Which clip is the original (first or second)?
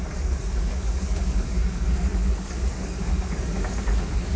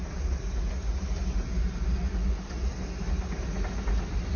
second